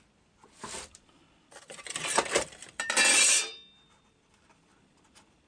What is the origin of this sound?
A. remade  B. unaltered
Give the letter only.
B